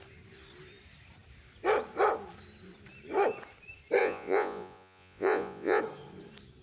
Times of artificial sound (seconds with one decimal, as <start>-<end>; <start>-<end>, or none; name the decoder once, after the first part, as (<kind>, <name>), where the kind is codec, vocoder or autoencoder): 4.0-5.8 (vocoder, Vocos)